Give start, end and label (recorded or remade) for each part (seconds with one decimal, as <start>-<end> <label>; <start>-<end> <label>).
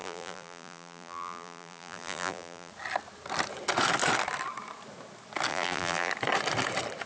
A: 0.0-2.7 remade; 2.7-5.5 recorded; 5.5-6.1 remade; 6.1-7.1 recorded